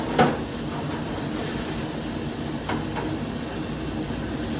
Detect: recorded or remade recorded